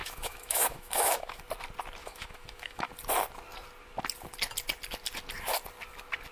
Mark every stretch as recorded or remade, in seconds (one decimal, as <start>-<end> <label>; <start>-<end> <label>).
0.0-1.4 remade; 1.4-2.0 recorded; 2.0-2.9 remade; 2.9-6.3 recorded